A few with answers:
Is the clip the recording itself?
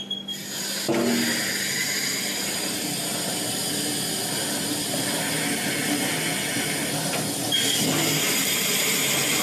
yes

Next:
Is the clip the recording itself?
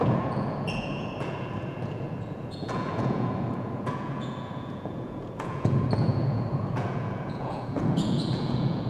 no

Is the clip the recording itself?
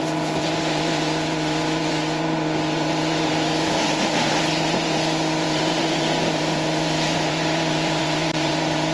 no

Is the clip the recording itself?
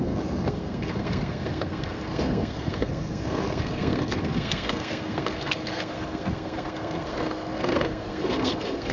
no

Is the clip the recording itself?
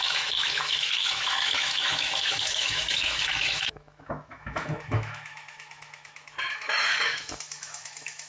no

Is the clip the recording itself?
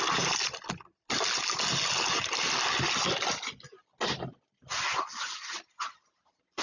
yes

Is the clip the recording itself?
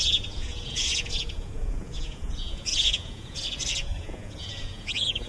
no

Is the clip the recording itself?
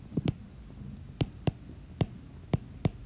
yes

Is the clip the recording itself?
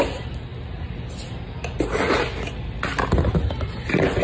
yes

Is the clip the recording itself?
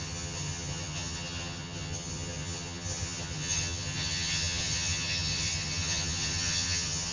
no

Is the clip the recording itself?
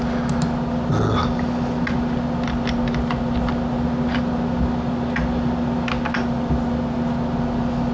yes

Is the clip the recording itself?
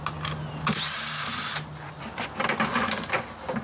yes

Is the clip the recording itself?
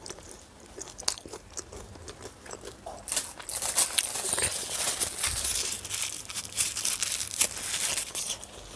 yes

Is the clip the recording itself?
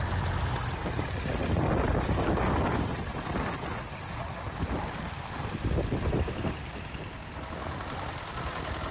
yes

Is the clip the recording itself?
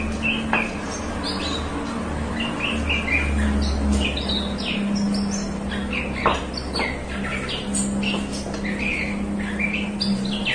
yes